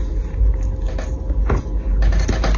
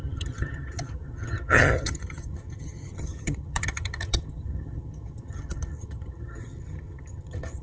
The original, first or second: first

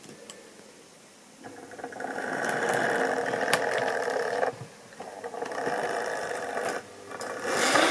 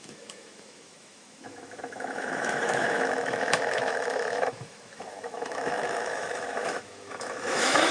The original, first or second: first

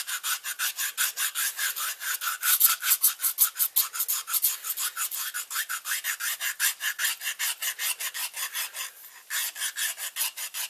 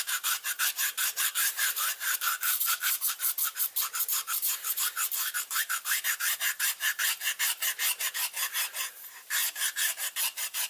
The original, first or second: first